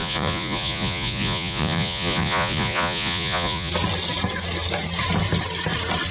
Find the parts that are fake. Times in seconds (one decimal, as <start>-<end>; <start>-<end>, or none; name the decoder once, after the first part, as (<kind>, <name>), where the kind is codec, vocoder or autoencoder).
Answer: 0.0-3.7 (vocoder, Vocos)